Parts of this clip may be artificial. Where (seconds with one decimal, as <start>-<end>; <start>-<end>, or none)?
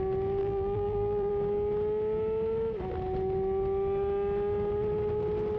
0.4-1.3